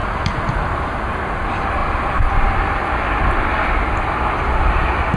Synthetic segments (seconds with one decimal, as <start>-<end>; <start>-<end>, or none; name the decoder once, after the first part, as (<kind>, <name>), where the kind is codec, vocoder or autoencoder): none